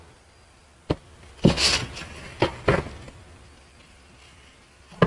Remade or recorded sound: recorded